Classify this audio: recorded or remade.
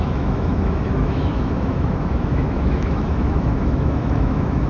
remade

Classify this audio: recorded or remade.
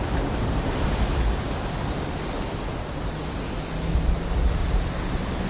recorded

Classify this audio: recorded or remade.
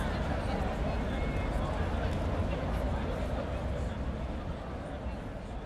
recorded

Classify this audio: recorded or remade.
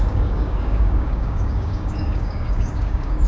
remade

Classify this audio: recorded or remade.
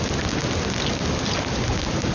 recorded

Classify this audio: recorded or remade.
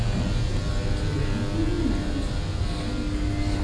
recorded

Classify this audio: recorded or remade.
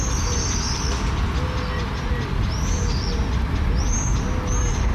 recorded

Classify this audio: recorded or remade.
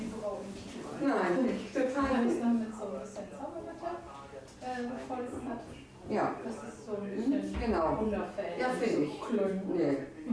recorded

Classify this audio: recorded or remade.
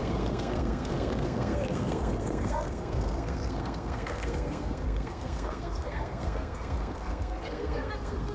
remade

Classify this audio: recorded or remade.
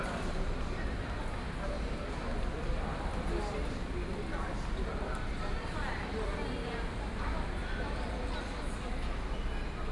recorded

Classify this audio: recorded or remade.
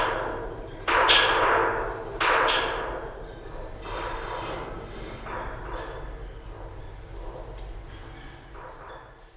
recorded